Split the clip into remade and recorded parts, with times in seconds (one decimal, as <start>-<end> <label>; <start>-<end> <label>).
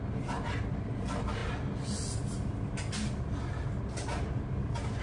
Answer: 0.0-5.0 recorded